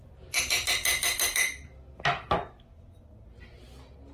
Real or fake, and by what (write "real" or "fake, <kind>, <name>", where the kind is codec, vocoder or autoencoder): real